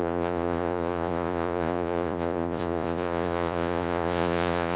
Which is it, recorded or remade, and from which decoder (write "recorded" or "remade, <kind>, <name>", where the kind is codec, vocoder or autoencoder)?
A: remade, vocoder, Vocos